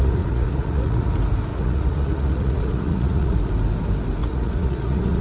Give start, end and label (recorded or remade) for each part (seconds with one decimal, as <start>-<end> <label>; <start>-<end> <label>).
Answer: 0.0-1.1 remade; 1.1-1.5 recorded; 1.5-3.4 remade; 3.4-4.2 recorded; 4.2-5.2 remade